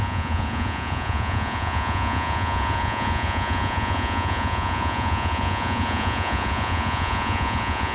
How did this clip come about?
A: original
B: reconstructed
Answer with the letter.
B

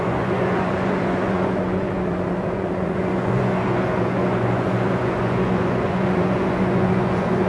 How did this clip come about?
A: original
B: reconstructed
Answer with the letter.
B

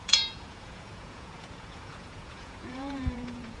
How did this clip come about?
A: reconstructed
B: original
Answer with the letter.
A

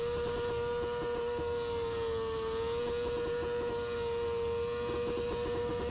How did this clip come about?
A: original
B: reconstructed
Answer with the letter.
A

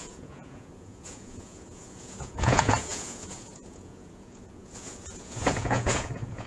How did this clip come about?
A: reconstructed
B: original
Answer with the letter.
A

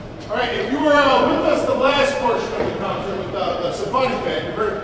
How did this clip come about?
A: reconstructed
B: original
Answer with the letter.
A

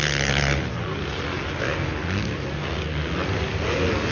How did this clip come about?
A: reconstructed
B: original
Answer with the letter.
B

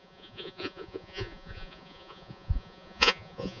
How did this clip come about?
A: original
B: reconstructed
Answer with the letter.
B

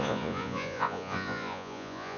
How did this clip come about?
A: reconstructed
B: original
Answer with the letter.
A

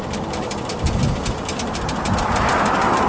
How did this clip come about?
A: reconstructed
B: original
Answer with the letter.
B